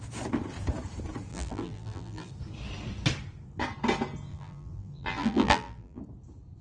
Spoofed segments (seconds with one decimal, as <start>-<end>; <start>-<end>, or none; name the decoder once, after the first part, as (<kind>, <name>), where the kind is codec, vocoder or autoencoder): 1.3-2.3 (vocoder, BigVGAN v2); 4.3-6.0